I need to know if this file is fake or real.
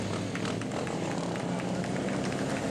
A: real